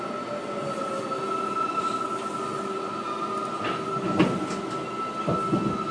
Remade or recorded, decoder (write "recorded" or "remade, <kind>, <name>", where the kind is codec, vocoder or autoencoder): recorded